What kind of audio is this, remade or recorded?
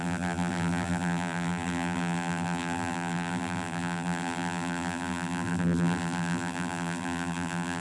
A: remade